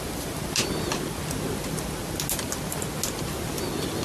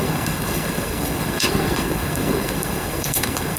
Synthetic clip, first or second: second